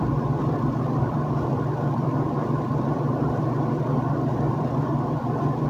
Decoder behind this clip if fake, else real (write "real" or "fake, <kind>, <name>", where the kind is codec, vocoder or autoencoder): fake, vocoder, BigVGAN v2